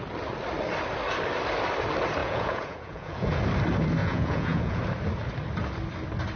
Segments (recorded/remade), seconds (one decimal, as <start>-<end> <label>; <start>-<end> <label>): 0.0-2.2 recorded; 2.2-3.3 remade; 3.3-4.0 recorded; 4.0-4.8 remade; 4.8-6.4 recorded